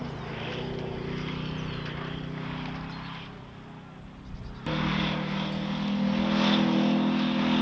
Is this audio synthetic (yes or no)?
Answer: no